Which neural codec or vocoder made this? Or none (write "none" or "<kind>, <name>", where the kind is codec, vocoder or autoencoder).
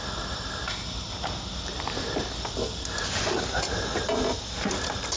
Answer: none